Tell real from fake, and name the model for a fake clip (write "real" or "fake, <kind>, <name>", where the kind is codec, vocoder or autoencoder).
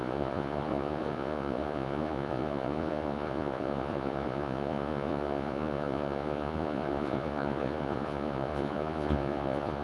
fake, vocoder, Vocos